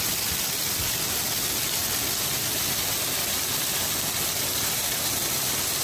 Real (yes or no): yes